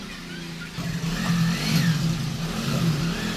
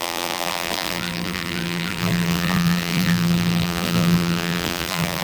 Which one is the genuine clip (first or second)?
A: first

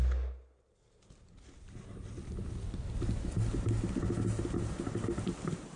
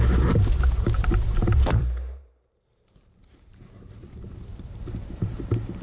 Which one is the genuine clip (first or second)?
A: first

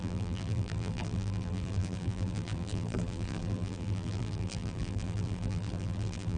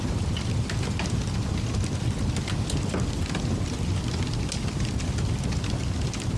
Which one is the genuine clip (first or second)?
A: second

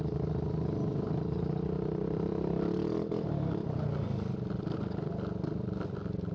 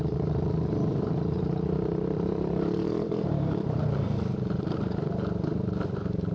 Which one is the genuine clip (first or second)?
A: first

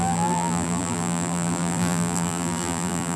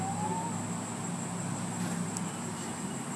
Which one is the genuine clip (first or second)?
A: second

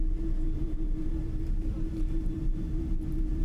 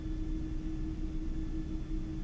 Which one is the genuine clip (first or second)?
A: second